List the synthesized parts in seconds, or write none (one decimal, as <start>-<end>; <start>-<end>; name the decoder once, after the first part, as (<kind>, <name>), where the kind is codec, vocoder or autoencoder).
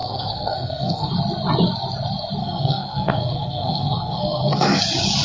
0.0-1.1 (codec, SNAC); 2.4-4.8